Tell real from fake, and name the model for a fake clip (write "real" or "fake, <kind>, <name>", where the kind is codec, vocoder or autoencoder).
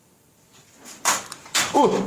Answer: fake, vocoder, BigVGAN v2